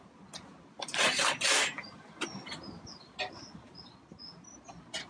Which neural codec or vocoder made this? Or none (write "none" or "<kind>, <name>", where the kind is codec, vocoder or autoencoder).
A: none